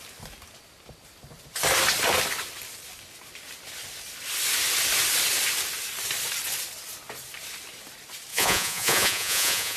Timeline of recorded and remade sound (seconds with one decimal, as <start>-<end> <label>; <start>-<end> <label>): 0.0-8.3 recorded; 8.3-9.8 remade